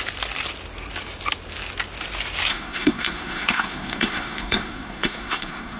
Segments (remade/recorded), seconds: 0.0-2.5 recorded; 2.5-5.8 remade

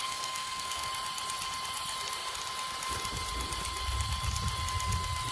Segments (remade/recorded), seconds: 0.0-0.9 remade; 0.9-5.3 recorded

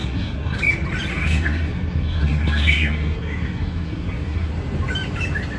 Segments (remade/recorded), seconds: 0.0-0.6 remade; 0.6-1.1 recorded; 1.1-4.5 remade; 4.5-5.6 recorded

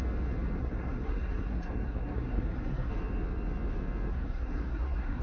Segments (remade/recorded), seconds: 0.0-0.6 recorded; 0.6-2.9 remade; 2.9-4.1 recorded; 4.1-5.2 remade

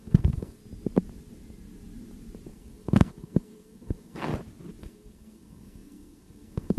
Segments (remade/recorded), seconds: 0.0-0.6 remade; 0.6-2.5 recorded; 2.5-4.3 remade; 4.3-4.8 recorded; 4.8-6.8 remade

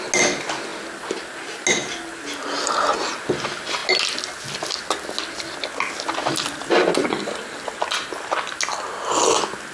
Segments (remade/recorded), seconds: 0.0-9.7 recorded

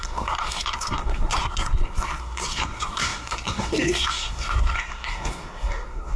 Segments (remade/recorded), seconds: 0.0-6.2 remade